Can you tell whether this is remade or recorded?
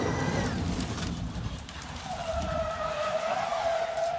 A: remade